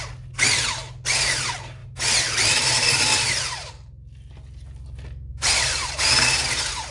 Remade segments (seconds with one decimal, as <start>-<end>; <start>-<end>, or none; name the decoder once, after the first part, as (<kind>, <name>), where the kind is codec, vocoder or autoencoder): 1.8-3.7 (vocoder, BigVGAN v2); 5.3-6.0